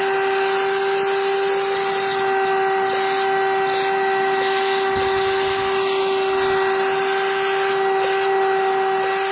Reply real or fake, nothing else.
real